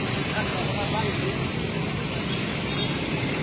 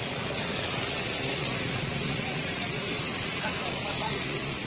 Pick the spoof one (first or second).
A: second